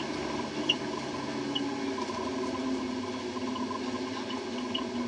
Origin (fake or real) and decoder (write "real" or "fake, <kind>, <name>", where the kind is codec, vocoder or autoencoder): real